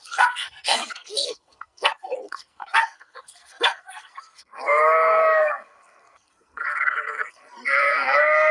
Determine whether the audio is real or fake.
fake